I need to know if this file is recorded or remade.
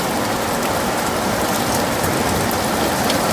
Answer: recorded